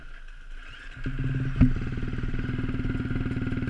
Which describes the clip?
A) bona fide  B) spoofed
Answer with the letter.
A